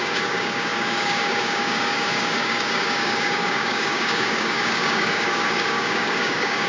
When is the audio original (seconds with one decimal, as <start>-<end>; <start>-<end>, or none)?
none